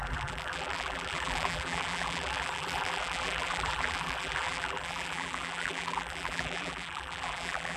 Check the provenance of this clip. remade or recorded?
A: remade